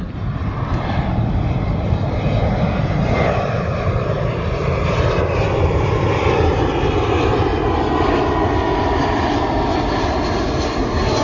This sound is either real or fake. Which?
fake